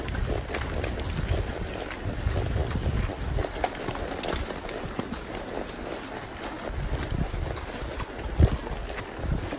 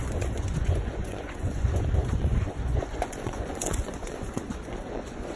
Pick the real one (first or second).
first